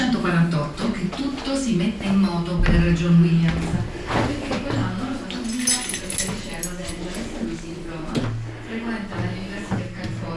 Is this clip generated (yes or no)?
no